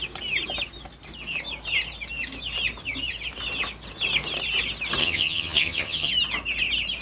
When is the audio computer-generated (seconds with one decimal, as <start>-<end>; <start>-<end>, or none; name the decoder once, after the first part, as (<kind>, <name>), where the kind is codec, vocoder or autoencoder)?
5.0-6.1 (vocoder, HiFi-GAN)